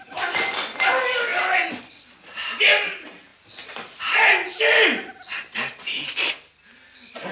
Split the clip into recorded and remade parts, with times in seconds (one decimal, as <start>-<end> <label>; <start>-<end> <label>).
0.0-7.3 recorded